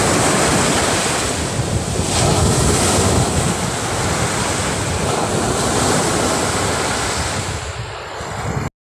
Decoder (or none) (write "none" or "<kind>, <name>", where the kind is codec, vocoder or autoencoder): none